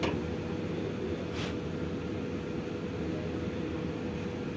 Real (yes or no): yes